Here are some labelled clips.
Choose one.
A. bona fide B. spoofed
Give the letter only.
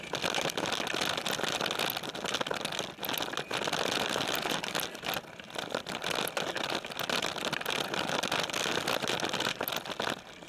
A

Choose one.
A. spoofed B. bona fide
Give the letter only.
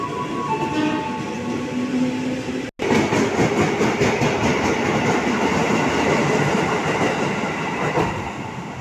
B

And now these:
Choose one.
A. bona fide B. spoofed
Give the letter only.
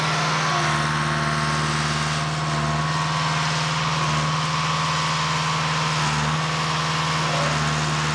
A